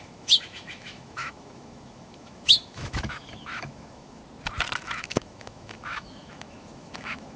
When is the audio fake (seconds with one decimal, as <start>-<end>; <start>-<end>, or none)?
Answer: 0.0-4.2; 4.8-7.4

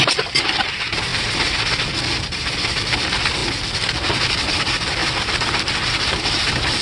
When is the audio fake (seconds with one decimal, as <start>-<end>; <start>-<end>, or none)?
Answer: 1.1-2.8; 5.0-6.8

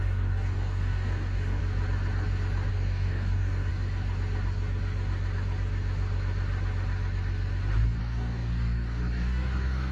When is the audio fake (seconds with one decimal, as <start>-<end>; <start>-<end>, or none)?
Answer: 0.0-1.6; 2.7-3.7; 8.0-9.9

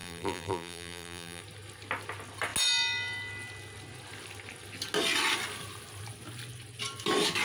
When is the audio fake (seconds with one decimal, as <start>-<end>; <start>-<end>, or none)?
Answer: 0.0-1.4

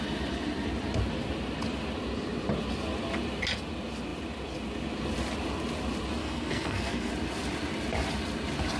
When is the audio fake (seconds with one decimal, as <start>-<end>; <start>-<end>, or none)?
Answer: 6.2-7.1

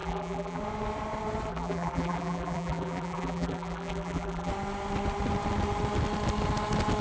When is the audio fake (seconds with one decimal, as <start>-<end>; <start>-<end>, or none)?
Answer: 0.0-0.6; 1.5-4.5

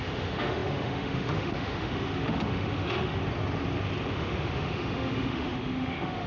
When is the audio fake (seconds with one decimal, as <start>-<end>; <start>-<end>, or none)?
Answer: 0.0-3.2; 4.1-6.3